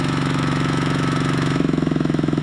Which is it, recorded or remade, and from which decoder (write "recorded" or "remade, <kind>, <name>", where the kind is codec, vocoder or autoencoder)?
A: remade, autoencoder, DAC-VAE